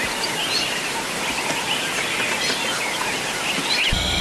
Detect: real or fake real